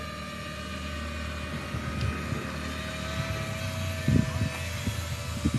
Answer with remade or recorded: recorded